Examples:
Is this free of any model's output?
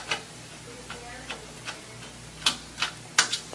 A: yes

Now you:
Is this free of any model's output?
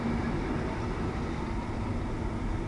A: yes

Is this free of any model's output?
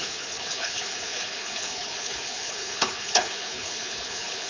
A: no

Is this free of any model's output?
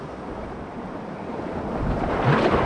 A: yes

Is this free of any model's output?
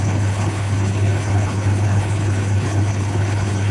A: no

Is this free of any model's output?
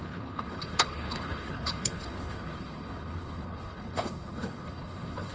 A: no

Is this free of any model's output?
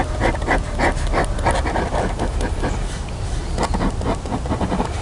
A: yes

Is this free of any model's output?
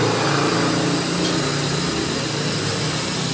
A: yes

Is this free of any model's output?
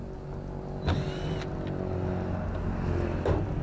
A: yes